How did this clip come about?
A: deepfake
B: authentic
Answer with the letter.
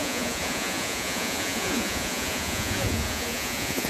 A